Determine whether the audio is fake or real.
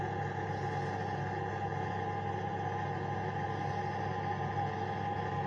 real